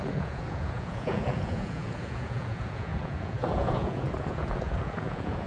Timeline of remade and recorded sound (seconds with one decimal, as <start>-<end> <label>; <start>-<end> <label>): 0.0-5.5 remade